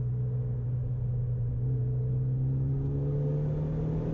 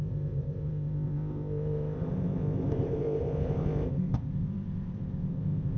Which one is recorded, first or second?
first